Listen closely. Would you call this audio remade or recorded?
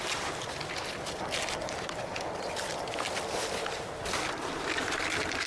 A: recorded